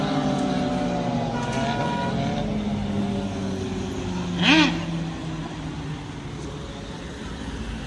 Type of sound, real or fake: real